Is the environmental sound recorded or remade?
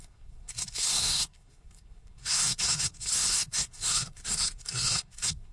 remade